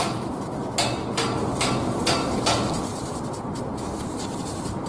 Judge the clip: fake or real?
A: real